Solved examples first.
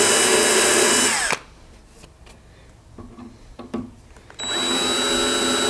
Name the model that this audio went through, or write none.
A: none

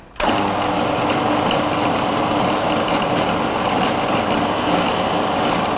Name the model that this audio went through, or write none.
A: vocoder, BigVGAN v2